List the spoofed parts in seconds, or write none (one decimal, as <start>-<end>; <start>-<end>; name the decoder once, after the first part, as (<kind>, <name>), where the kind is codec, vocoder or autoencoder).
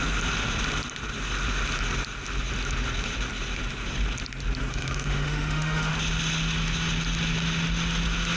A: 4.7-5.9 (autoencoder, DAC-VAE)